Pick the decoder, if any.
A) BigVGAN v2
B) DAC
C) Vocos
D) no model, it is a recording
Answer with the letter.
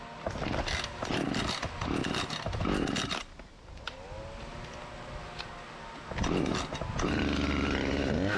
D